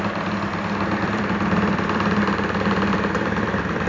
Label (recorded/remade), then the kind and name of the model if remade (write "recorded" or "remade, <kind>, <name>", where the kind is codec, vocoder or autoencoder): remade, vocoder, BigVGAN v2